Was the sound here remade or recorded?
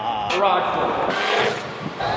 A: recorded